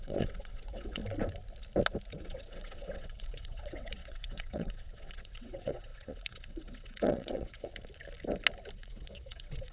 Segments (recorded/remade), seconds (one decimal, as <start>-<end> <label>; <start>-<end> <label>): 0.0-1.0 remade; 1.0-2.1 recorded; 2.1-7.7 remade; 7.7-8.7 recorded; 8.7-9.7 remade